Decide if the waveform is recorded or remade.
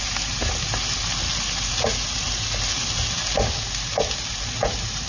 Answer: recorded